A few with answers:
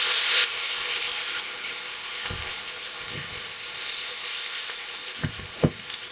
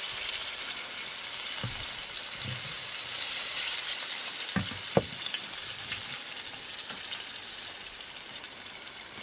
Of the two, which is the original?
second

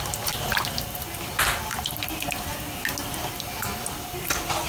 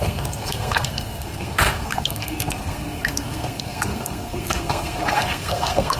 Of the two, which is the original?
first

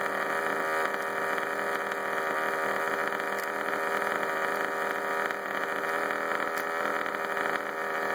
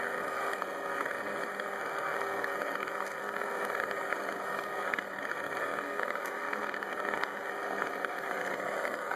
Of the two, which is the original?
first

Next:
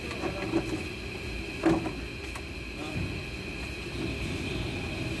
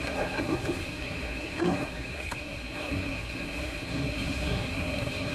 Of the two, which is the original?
first